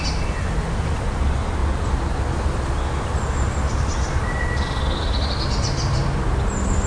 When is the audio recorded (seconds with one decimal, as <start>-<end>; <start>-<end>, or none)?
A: 0.0-6.9